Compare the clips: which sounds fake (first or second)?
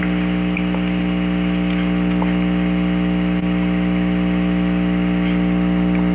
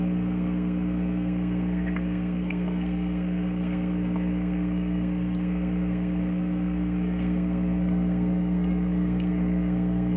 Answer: second